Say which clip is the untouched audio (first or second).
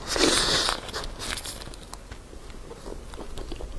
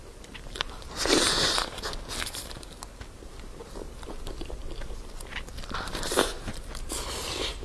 first